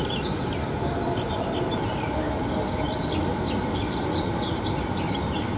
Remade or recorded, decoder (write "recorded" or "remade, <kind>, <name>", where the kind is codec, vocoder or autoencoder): recorded